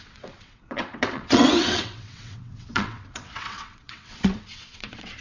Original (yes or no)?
no